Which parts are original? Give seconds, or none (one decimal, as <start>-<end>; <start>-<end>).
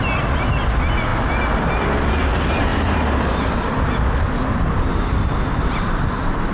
0.0-6.5